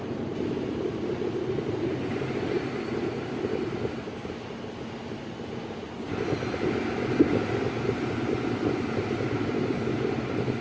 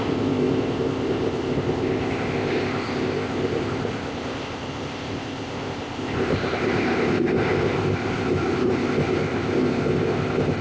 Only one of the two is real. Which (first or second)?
first